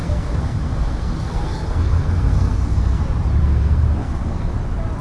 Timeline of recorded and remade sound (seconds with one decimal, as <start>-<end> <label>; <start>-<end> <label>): 0.0-3.0 remade; 3.0-3.4 recorded; 3.4-4.5 remade; 4.5-5.0 recorded

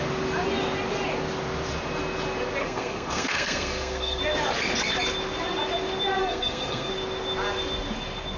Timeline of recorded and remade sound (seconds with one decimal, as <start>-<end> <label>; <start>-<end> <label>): 0.0-2.6 recorded; 2.6-4.2 remade; 4.2-6.2 recorded; 6.2-6.9 remade; 6.9-8.4 recorded